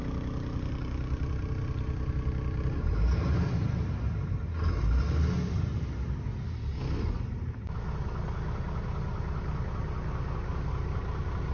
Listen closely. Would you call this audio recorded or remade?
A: recorded